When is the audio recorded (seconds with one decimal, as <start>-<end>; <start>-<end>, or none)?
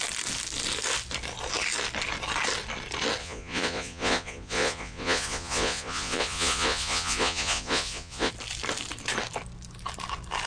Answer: 0.0-3.2; 8.3-10.5